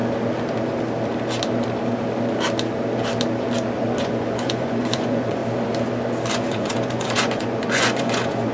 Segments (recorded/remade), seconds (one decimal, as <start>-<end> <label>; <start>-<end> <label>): 0.0-4.0 recorded; 4.0-5.4 remade; 5.4-6.3 recorded; 6.3-8.5 remade